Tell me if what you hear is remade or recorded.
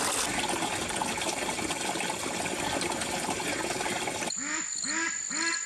recorded